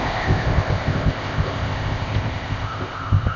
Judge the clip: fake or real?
fake